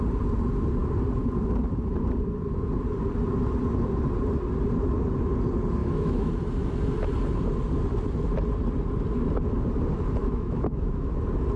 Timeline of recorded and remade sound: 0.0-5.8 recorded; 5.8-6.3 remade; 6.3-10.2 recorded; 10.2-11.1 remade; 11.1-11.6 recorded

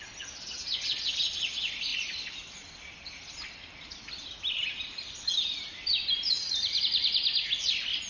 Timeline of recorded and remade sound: 0.0-1.9 recorded; 1.9-6.8 remade; 6.8-8.1 recorded

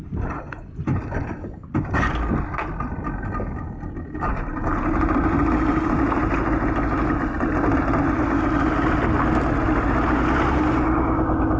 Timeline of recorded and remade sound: 0.0-11.6 recorded

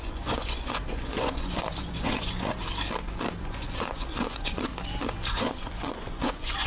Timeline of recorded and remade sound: 0.0-2.6 remade; 2.6-3.4 recorded; 3.4-4.7 remade; 4.7-5.3 recorded; 5.3-6.7 remade